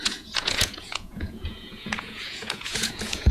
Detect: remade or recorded remade